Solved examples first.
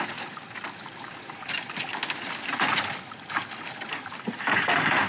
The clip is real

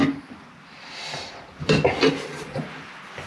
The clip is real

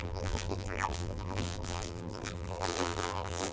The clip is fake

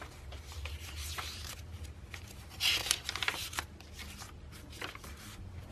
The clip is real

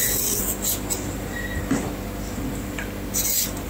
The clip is real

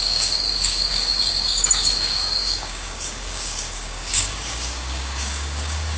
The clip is fake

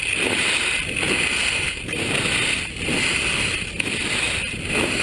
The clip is real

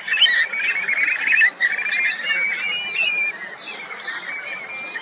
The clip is real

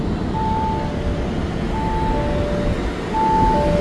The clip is real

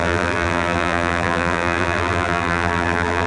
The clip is fake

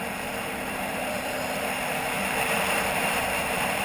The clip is fake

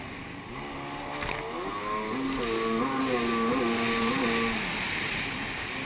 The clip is real